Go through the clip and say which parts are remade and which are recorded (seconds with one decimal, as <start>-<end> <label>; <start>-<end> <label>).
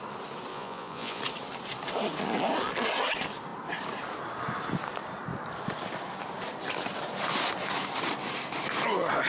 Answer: 0.0-0.5 recorded; 0.5-1.2 remade; 1.2-9.3 recorded